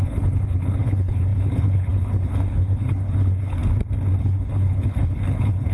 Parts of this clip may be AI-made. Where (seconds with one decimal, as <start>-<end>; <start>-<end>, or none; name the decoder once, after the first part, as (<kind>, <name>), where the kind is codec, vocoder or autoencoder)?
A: 0.0-3.6 (codec, HILCodec); 4.2-5.7